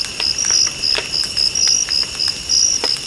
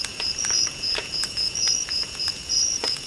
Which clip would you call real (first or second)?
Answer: first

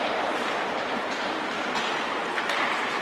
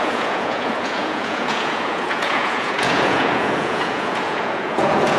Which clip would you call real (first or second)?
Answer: first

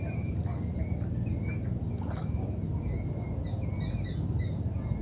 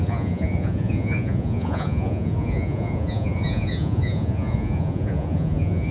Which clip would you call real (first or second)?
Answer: first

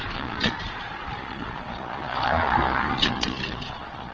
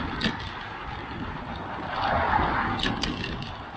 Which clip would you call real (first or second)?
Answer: second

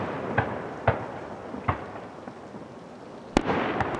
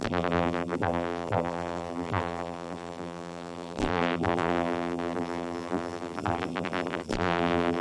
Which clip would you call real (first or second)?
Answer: first